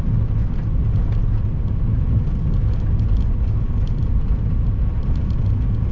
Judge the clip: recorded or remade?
recorded